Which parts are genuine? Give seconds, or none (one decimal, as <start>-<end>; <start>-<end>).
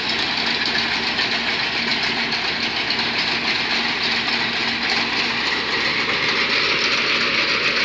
0.0-7.8